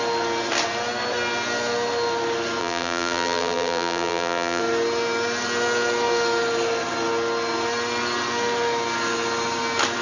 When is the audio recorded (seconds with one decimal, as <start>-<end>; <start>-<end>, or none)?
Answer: 0.0-2.6; 4.6-10.0